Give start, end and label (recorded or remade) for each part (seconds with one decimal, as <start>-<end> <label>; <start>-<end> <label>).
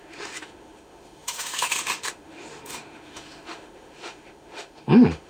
0.0-5.3 remade